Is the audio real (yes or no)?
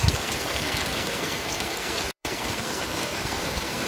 no